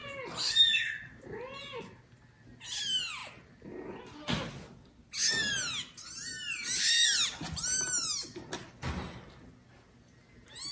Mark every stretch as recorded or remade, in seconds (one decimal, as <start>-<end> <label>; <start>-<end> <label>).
0.0-10.7 recorded